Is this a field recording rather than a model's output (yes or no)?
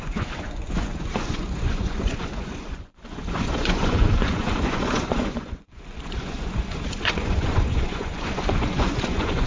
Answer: no